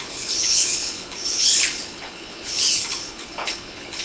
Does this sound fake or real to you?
fake